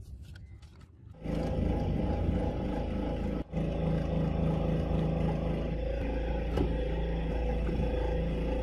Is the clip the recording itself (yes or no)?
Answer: yes